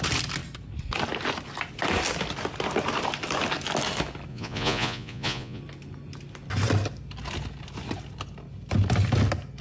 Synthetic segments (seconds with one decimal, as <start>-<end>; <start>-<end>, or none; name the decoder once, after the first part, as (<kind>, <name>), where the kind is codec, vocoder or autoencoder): 4.3-5.6 (vocoder, Vocos)